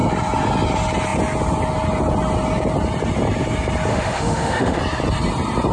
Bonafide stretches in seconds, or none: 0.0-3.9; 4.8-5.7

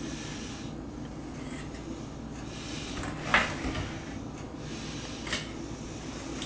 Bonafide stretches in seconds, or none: 0.0-6.5

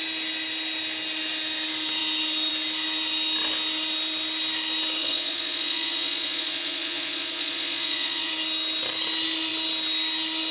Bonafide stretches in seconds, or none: 0.0-5.0; 8.3-10.5

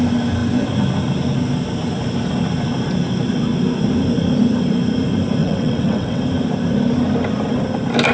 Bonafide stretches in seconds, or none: 0.0-5.4; 6.2-8.1